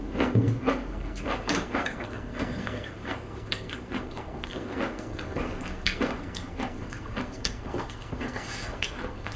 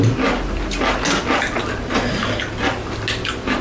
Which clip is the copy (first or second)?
first